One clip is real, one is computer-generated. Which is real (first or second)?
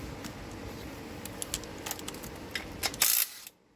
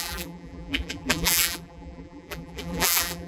first